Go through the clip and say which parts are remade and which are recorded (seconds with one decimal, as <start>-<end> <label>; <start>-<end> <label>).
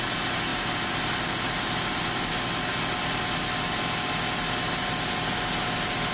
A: 0.0-6.1 recorded